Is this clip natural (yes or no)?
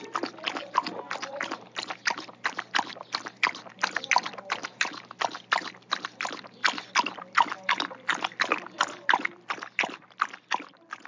yes